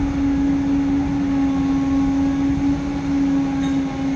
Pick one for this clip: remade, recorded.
recorded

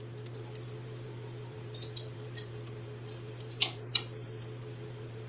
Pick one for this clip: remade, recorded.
remade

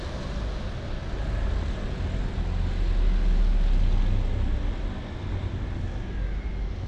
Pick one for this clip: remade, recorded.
recorded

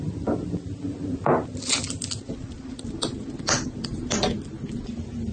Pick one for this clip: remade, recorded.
recorded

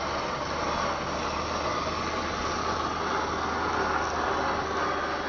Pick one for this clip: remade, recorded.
recorded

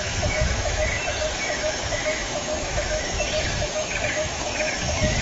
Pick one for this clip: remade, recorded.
remade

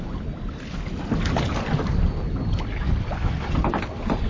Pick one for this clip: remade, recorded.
recorded